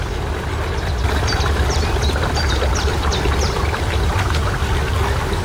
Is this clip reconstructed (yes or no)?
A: no